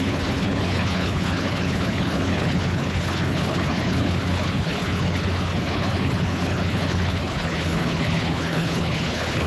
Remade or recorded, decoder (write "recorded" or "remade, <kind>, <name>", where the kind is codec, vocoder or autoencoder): remade, codec, HILCodec